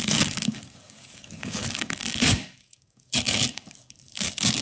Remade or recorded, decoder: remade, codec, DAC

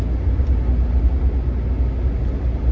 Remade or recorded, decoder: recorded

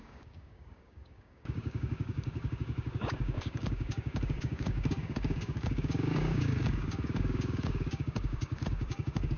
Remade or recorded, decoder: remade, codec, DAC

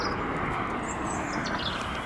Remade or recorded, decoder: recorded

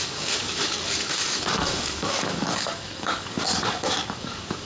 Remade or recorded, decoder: remade, codec, DAC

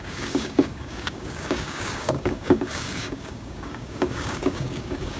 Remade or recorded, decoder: remade, codec, DAC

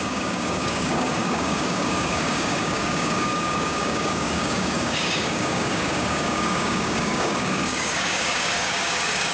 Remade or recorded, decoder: remade, codec, DAC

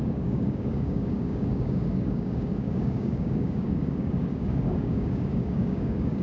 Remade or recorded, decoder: remade, codec, DAC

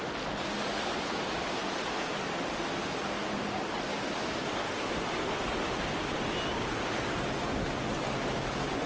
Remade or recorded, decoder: recorded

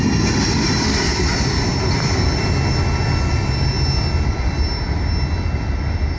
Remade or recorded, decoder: recorded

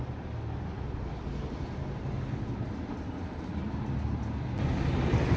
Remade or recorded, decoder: recorded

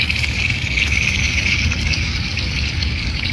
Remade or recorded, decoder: remade, codec, DAC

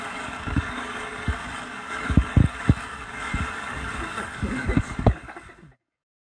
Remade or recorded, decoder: remade, codec, DAC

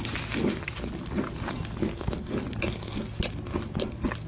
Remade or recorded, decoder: recorded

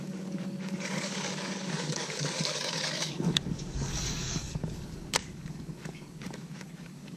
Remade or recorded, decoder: remade, codec, DAC